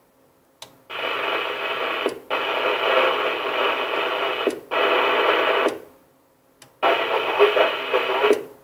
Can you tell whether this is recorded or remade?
recorded